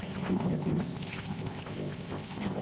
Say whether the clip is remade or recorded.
remade